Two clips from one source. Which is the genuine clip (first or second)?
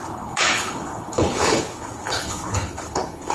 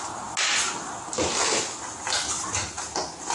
second